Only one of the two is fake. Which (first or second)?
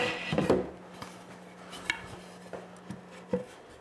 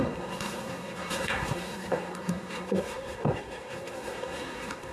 second